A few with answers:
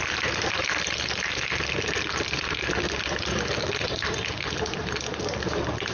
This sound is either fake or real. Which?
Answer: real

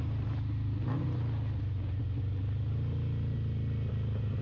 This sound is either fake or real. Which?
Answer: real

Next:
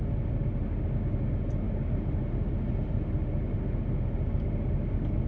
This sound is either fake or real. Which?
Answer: real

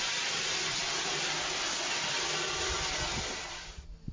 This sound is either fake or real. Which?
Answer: real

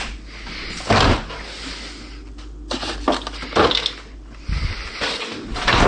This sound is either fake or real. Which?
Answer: real